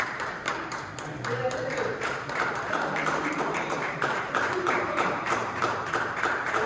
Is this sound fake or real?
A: fake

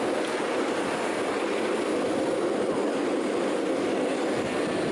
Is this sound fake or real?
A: real